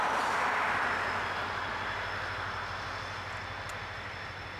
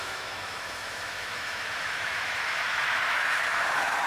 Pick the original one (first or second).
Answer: first